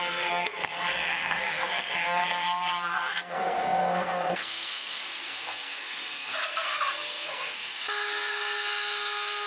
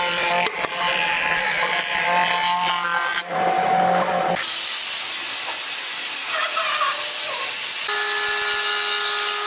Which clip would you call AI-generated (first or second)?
first